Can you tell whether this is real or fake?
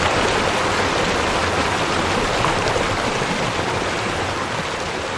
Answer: real